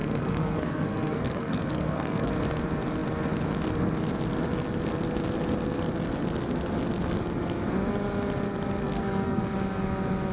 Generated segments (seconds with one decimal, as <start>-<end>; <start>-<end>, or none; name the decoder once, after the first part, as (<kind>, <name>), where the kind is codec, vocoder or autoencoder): 0.0-2.3 (codec, SNAC); 8.8-9.4